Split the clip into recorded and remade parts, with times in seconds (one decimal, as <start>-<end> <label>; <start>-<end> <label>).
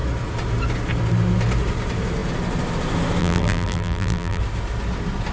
0.0-3.2 recorded; 3.2-4.4 remade; 4.4-5.3 recorded